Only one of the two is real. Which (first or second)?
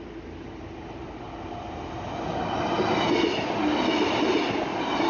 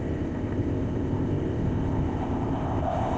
first